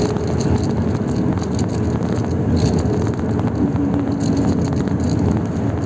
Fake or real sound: real